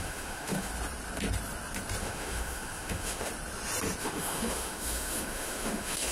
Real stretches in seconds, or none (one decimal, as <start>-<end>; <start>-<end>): 0.7-2.0; 3.3-4.0